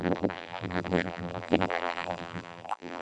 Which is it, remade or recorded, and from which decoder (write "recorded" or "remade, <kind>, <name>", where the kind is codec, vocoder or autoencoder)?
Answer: remade, vocoder, BigVGAN v2